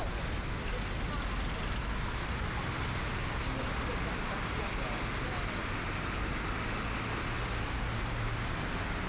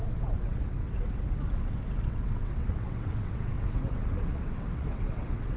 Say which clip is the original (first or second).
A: first